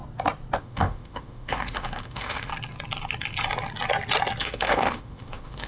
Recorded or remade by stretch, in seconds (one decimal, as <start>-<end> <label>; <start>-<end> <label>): 0.0-0.6 recorded; 0.6-2.5 remade; 2.5-4.4 recorded; 4.4-5.7 remade